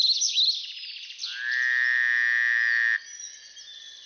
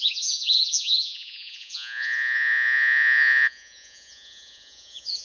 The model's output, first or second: second